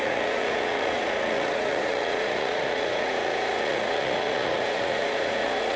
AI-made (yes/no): yes